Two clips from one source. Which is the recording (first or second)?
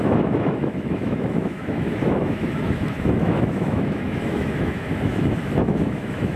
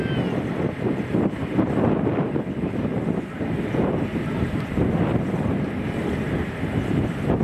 second